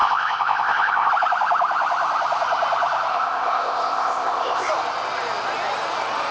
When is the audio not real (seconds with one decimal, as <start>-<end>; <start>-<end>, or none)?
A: 0.0-1.1; 3.1-4.7